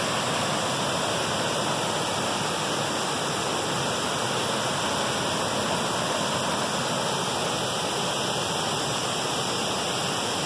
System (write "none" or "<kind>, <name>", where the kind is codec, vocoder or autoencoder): none